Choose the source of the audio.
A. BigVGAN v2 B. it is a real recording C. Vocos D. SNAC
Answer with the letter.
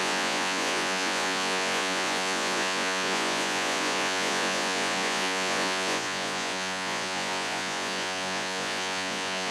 C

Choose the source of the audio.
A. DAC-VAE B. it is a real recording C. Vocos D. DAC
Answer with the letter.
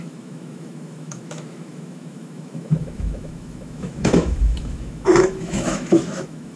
A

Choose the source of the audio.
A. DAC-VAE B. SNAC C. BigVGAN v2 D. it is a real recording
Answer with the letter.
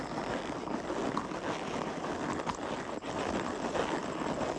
D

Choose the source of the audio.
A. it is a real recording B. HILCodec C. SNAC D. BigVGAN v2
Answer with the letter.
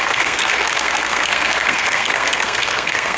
C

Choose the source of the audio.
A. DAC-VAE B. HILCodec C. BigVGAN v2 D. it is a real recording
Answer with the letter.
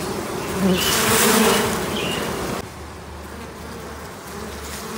D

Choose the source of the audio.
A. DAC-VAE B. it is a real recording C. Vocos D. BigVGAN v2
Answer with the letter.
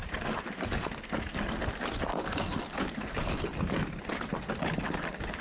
B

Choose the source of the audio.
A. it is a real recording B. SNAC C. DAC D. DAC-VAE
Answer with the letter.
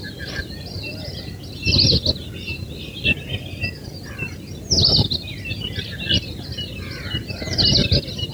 A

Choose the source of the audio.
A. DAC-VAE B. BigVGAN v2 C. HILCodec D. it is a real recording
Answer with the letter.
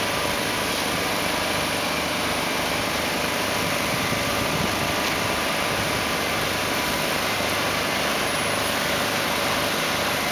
D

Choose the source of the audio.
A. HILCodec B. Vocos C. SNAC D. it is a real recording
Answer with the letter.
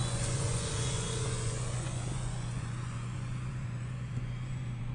B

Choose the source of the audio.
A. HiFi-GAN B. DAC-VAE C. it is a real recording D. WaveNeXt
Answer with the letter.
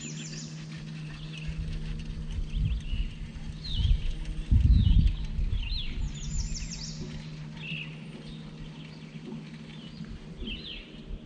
C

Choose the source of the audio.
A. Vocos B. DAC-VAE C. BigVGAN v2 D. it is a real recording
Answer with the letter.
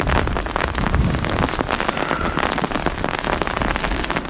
D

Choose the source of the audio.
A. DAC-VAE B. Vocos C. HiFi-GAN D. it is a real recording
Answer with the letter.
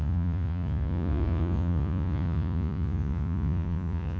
B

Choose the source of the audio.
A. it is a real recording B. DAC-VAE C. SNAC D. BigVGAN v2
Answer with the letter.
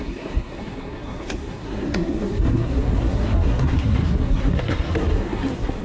C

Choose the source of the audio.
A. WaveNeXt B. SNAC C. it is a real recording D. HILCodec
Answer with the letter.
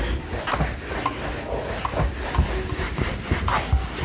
C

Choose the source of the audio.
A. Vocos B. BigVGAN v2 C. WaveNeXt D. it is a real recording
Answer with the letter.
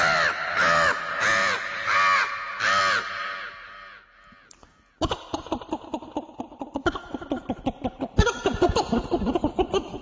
D